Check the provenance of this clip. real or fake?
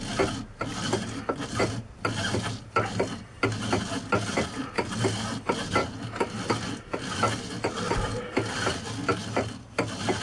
real